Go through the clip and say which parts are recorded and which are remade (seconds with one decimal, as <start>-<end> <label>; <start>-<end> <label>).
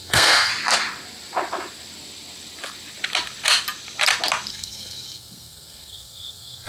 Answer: 0.0-0.5 remade; 0.5-4.5 recorded; 4.5-6.7 remade